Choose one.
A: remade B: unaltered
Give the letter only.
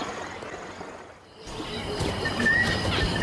B